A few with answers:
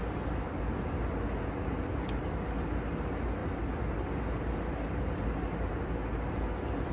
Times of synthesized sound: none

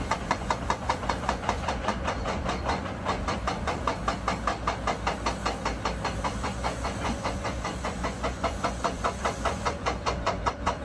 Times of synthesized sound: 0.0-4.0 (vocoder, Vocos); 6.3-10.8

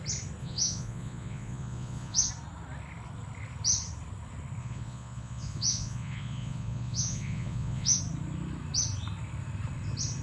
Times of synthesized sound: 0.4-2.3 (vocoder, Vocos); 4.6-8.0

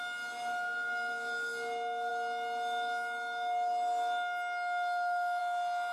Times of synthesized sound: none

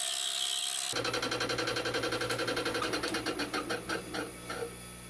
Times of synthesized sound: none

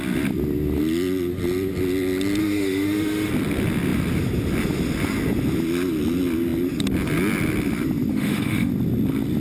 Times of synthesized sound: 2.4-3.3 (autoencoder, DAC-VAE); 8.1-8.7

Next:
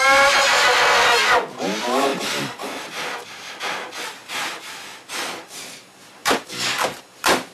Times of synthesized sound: 2.1-3.6 (vocoder, BigVGAN v2); 4.2-5.6; 6.2-7.5